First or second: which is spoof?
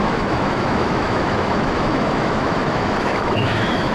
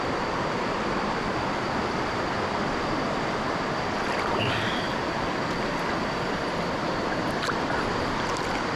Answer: first